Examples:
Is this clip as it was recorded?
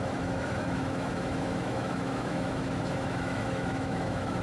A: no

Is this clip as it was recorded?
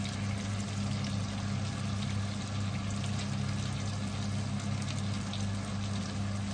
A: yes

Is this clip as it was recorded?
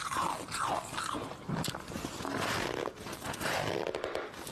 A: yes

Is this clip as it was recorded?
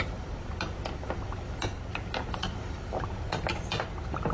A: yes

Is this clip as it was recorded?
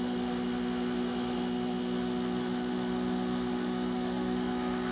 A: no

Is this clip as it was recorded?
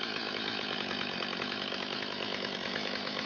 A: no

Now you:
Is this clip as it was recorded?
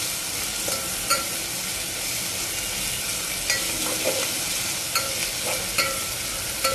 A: yes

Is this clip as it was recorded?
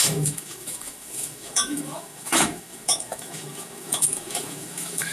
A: no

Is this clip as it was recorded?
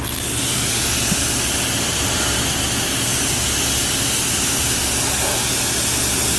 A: yes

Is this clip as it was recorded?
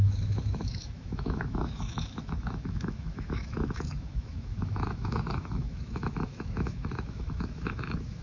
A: no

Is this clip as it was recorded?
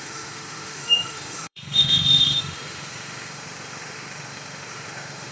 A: no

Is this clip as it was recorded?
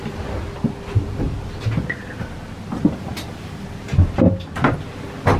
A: yes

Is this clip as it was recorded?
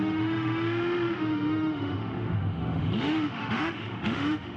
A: no